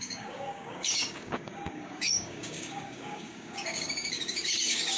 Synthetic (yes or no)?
yes